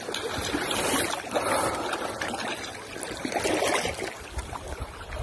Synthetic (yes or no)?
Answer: no